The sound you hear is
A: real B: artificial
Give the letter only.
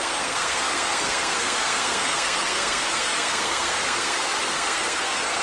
B